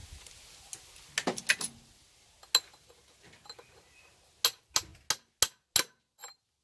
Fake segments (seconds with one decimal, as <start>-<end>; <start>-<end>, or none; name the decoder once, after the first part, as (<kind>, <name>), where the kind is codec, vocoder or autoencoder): none